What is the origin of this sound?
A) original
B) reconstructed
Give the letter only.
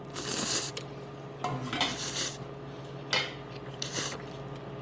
A